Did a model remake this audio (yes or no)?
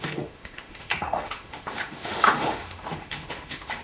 yes